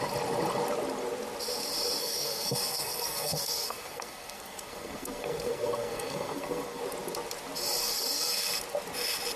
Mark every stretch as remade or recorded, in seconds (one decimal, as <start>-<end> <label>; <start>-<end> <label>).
0.0-2.0 recorded; 2.0-6.8 remade; 6.8-7.8 recorded; 7.8-8.4 remade; 8.4-9.4 recorded